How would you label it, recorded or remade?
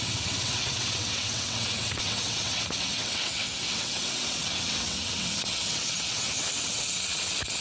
remade